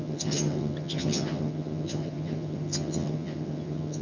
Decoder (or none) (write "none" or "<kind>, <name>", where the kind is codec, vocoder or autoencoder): vocoder, HiFi-GAN